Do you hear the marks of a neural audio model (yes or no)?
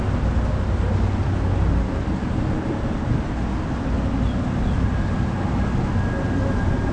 no